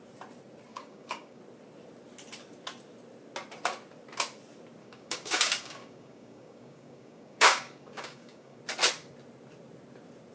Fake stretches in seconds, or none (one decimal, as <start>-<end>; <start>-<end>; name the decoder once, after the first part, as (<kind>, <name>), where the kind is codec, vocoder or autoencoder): 0.7-1.4 (codec, DAC); 4.8-8.6